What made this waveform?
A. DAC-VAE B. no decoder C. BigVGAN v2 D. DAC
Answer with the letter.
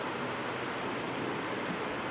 B